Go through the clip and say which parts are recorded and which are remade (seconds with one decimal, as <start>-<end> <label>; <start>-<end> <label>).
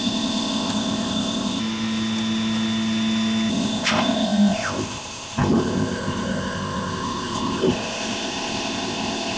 0.0-1.6 remade; 1.6-3.5 recorded; 3.5-9.4 remade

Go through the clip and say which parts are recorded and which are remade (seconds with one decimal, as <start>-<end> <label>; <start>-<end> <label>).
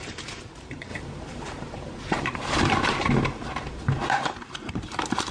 0.0-5.3 remade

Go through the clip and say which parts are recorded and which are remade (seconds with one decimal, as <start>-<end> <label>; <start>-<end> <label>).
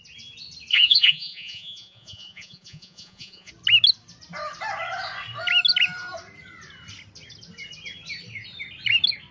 0.0-0.7 recorded; 0.7-3.5 remade; 3.5-9.3 recorded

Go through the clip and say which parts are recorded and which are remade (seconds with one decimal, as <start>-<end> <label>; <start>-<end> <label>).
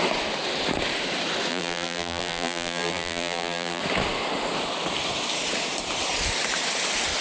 0.0-1.5 recorded; 1.5-3.8 remade; 3.8-7.2 recorded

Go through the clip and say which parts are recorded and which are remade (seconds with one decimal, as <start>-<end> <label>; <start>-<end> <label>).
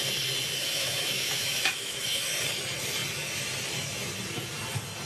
0.0-0.5 recorded; 0.5-2.2 remade; 2.2-5.1 recorded